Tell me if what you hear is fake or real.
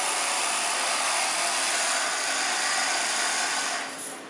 real